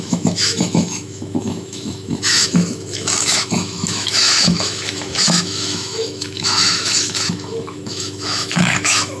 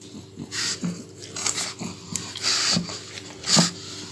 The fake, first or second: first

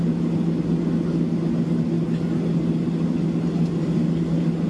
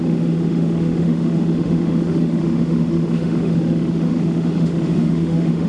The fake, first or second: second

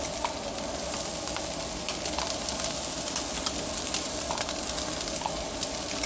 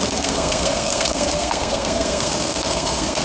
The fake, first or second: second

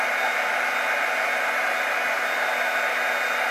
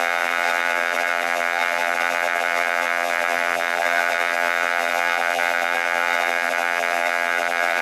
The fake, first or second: second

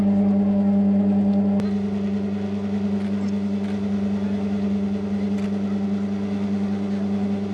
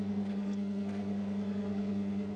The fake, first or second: second